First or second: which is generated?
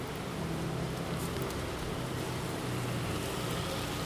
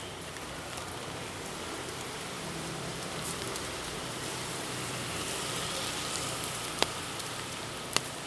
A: second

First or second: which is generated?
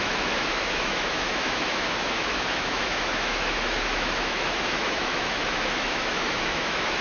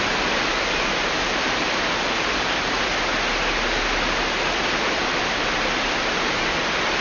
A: first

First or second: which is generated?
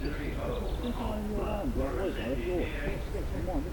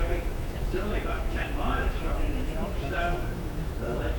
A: second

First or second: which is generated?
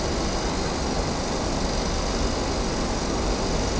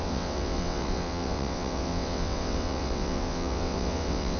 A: second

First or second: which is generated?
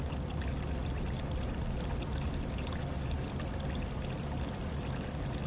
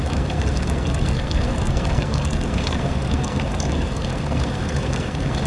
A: second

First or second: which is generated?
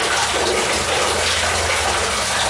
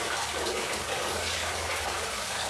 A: second